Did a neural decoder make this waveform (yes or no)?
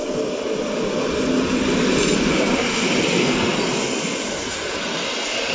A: no